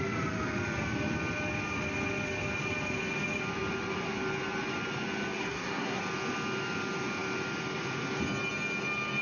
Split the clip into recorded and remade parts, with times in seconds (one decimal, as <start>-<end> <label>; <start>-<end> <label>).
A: 0.0-5.4 recorded; 5.4-6.0 remade; 6.0-9.2 recorded